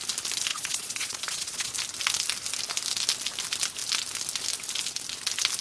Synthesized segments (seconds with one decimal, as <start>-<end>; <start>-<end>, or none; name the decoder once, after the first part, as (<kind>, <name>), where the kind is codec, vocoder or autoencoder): 0.5-1.7 (vocoder, Vocos)